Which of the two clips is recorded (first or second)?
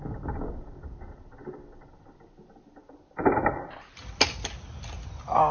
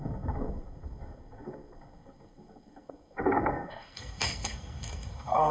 first